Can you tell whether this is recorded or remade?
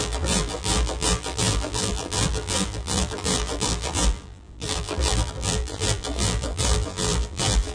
remade